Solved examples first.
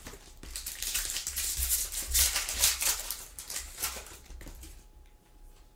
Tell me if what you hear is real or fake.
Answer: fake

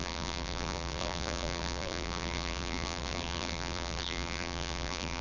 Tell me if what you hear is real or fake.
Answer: fake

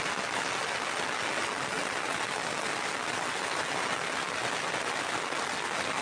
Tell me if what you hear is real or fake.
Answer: real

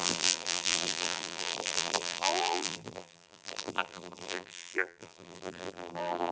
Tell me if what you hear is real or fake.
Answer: fake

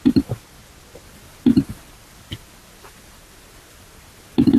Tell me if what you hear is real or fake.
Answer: real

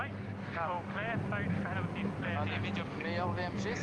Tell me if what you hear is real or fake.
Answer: real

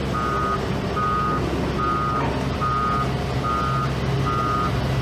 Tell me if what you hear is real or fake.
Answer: real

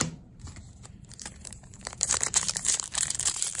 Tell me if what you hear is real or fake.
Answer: fake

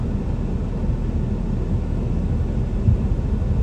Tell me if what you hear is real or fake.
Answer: real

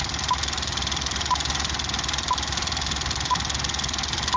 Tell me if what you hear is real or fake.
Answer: real